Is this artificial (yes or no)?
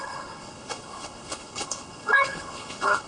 yes